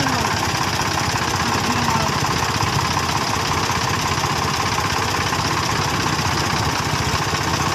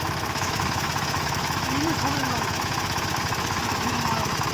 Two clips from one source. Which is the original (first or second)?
first